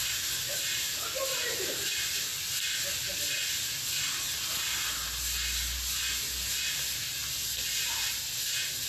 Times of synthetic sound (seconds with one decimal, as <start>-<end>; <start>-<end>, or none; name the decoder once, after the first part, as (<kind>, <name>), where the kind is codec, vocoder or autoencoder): none